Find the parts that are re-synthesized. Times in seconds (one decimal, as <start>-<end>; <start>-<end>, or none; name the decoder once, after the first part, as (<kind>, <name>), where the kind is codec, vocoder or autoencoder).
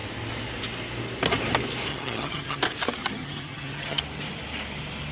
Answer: 1.9-2.6 (vocoder, HiFi-GAN); 3.0-4.0